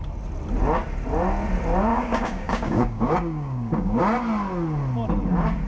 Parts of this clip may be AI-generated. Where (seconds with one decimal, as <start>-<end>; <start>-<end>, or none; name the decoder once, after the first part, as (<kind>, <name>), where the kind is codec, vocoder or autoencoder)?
1.9-4.0 (codec, DAC)